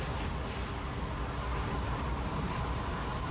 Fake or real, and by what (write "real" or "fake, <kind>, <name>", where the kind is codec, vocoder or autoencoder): real